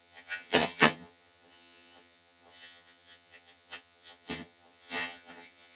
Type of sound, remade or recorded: remade